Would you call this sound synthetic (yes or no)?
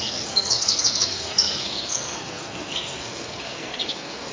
yes